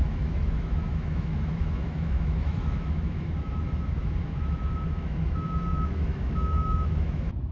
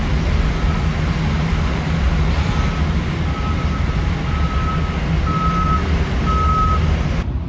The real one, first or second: second